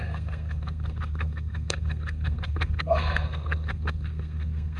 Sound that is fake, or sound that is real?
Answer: fake